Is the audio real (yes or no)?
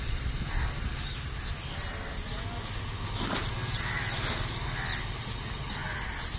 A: yes